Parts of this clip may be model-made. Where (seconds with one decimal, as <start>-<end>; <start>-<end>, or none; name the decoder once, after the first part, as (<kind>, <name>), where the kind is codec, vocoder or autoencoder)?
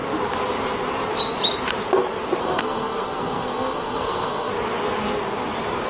2.4-4.5 (codec, SNAC)